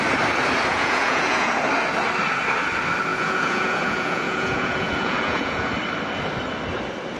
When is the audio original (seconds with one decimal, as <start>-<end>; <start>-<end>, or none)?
0.0-0.7; 1.5-3.1; 5.7-7.2